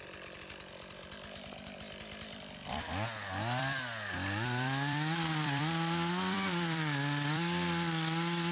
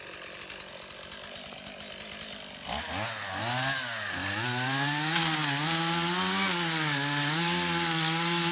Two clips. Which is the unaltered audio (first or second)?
second